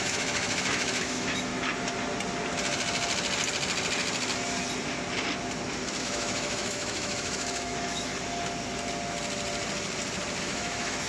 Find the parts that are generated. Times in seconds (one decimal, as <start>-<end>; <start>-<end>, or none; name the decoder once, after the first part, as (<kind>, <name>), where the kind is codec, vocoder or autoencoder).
0.0-1.5 (autoencoder, DAC-VAE); 6.0-8.1; 10.4-11.1